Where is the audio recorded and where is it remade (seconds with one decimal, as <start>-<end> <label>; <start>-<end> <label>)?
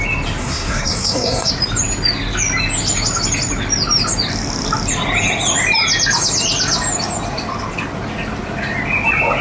0.0-0.4 recorded; 0.4-1.5 remade; 1.5-9.4 recorded